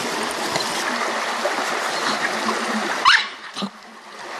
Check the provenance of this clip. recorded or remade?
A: recorded